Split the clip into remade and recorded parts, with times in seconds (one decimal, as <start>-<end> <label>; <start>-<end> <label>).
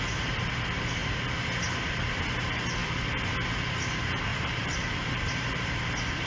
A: 0.0-2.8 recorded; 2.8-3.5 remade; 3.5-4.3 recorded; 4.3-5.2 remade; 5.2-6.3 recorded